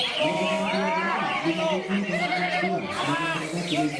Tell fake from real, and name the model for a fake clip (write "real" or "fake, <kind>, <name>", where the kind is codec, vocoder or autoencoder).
real